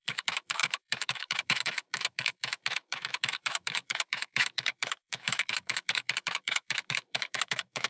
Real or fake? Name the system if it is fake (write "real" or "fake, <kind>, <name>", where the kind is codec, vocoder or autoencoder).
fake, autoencoder, DAC-VAE